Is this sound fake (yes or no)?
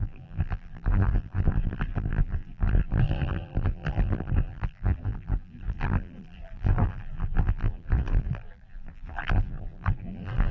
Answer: yes